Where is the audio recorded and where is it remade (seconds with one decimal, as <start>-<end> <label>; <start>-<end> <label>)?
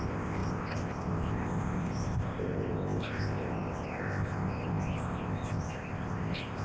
0.0-6.6 remade